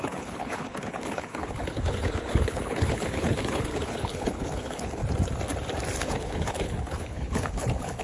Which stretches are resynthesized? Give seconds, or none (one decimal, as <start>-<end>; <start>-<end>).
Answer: 0.0-5.0; 6.0-8.0